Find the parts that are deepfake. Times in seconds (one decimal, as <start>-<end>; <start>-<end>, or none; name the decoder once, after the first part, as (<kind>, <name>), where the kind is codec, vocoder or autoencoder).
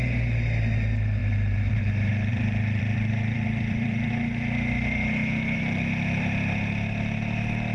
1.2-1.7 (vocoder, BigVGAN v2); 2.1-4.1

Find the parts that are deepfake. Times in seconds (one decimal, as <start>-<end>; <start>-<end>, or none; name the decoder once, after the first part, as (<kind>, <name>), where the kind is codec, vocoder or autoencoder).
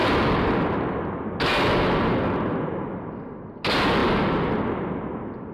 none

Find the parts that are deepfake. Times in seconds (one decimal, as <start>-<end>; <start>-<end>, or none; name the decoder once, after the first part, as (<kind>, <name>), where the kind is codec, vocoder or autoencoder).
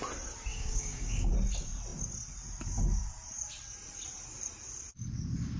0.5-1.3 (codec, DAC)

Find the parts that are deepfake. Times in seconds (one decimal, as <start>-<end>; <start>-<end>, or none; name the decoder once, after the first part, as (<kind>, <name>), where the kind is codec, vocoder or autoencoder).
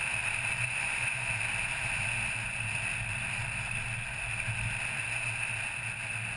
0.6-1.3 (vocoder, Vocos)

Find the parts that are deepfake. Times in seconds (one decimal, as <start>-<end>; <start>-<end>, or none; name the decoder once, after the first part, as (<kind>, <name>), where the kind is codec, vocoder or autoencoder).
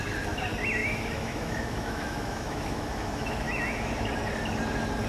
0.8-3.9 (autoencoder, DAC-VAE)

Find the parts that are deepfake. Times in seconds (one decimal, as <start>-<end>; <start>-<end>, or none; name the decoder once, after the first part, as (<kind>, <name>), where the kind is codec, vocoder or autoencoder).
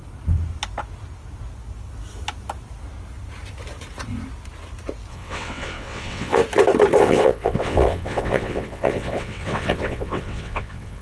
5.1-6.4 (vocoder, WaveNeXt); 7.0-11.0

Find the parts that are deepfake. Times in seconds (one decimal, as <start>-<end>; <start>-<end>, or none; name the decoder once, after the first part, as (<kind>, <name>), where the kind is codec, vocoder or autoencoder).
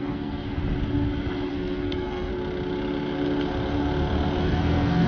0.0-0.6 (codec, SNAC); 1.5-2.3; 4.4-5.1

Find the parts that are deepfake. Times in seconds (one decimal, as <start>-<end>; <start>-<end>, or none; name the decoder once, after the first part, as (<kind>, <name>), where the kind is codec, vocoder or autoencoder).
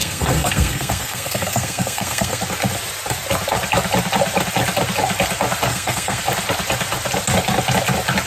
0.0-2.4 (codec, SNAC); 5.7-6.2